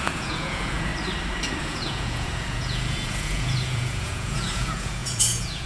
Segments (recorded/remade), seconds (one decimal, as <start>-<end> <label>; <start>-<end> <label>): 0.0-0.9 remade; 0.9-1.6 recorded; 1.6-5.7 remade